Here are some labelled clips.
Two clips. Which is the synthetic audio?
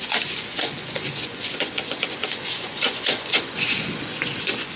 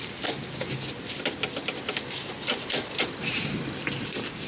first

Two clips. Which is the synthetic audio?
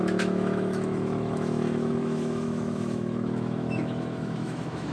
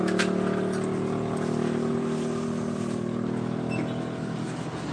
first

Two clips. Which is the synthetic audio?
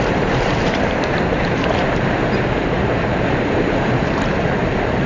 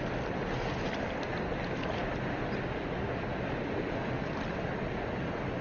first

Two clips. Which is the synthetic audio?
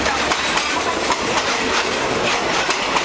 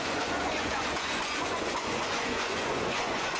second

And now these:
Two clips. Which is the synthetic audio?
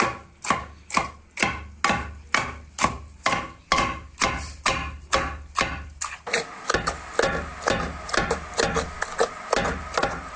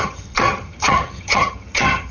second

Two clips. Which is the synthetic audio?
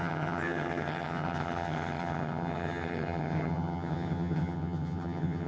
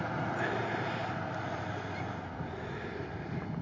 first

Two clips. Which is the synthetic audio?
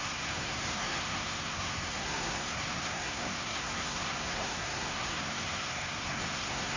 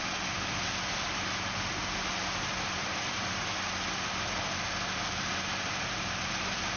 first